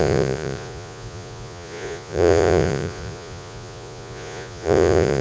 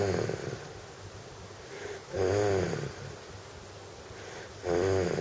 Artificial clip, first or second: first